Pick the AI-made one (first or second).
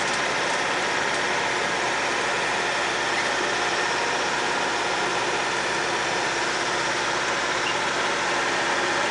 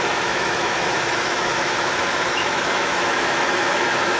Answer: second